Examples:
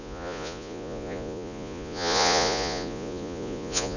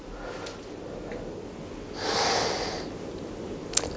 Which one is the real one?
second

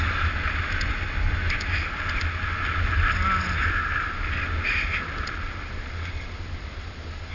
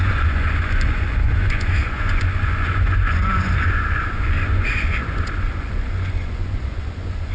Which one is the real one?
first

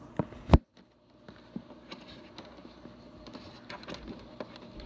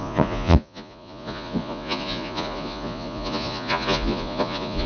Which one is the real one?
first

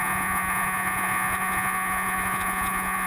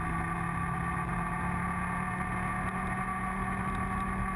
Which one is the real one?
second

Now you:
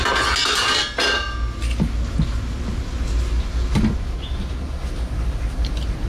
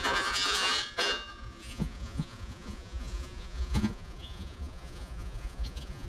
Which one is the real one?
first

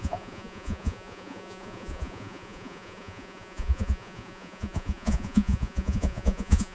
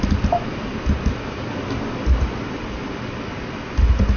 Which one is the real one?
second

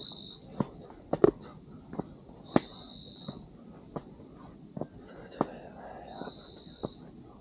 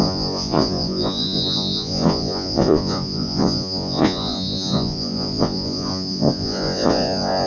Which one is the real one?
first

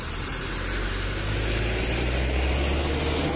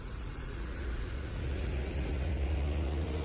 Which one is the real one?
first